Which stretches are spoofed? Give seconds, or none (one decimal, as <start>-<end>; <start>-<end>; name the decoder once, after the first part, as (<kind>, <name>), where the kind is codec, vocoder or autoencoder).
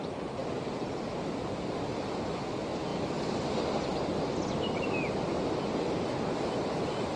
0.4-1.0 (vocoder, BigVGAN v2); 2.9-5.1